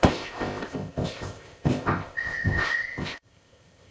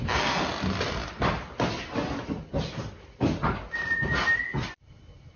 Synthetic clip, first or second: first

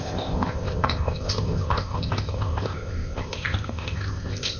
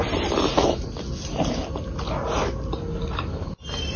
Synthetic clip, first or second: first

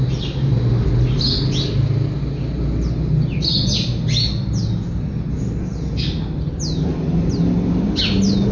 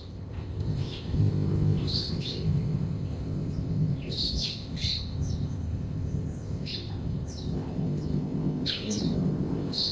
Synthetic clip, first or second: second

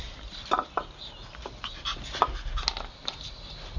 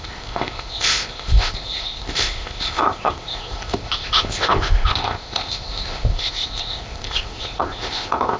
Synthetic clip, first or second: second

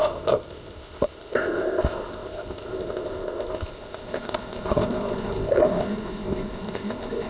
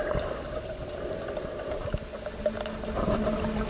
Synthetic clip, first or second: first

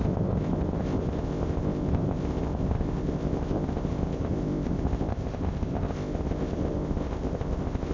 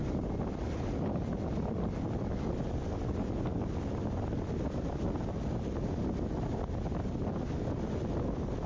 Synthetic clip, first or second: first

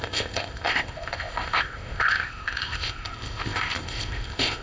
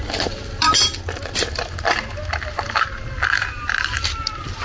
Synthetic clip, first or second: first